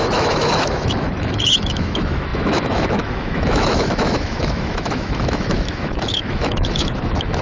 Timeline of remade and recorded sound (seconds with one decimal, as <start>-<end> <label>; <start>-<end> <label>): 0.0-7.4 remade